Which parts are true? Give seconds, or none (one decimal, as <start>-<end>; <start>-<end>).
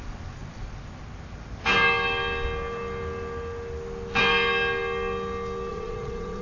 0.0-5.7